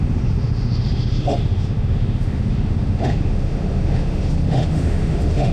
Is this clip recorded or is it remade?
remade